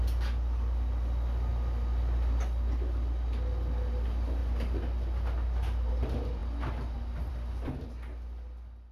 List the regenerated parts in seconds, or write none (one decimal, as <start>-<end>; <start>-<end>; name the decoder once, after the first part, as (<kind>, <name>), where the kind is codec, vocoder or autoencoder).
none